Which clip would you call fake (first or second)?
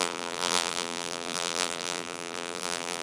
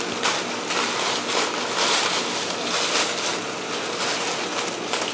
first